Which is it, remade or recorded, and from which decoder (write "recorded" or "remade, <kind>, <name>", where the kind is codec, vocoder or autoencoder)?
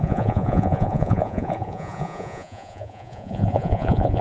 remade, vocoder, Vocos